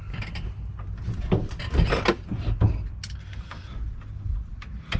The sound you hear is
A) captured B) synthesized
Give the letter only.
A